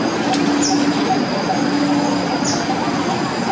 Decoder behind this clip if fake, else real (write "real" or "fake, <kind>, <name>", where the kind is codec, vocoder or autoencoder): real